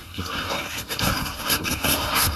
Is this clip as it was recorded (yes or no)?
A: no